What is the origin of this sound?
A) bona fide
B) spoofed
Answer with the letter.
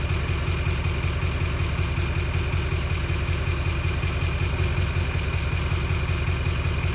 A